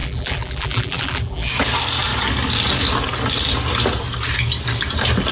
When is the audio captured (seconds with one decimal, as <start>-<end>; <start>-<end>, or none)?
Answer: 1.5-5.3